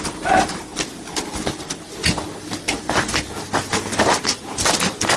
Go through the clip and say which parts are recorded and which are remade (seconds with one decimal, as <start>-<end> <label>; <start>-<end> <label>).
0.0-5.2 recorded